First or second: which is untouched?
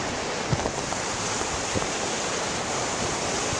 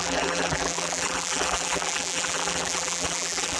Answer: first